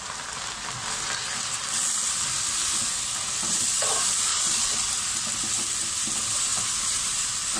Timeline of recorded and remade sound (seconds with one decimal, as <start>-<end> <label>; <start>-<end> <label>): 0.0-4.3 recorded; 4.3-4.9 remade; 4.9-7.6 recorded